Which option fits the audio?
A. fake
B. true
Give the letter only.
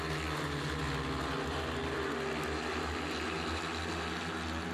B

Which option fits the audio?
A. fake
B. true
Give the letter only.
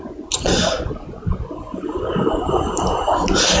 B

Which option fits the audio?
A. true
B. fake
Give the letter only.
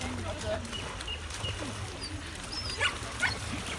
A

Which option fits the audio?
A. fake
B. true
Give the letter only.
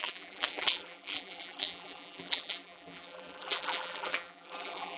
A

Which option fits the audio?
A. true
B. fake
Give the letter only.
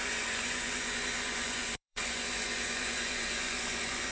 B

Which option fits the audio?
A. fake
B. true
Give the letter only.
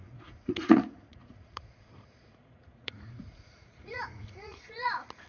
A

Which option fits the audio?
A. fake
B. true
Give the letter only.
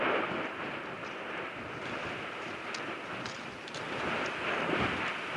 A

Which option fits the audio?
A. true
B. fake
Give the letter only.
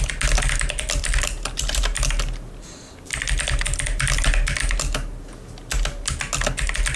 A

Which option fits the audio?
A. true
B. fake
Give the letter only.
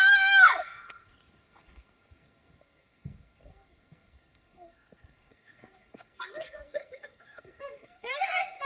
B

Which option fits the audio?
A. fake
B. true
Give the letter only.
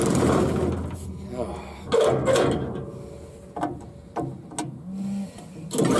B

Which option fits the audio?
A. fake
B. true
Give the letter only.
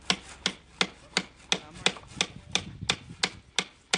B